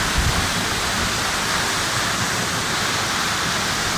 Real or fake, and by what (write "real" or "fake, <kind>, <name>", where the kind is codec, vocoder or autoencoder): real